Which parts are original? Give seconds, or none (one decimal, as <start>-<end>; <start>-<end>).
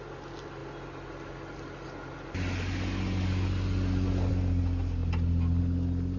0.0-6.2